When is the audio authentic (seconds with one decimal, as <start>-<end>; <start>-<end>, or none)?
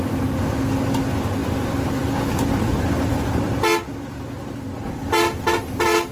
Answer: 0.0-6.1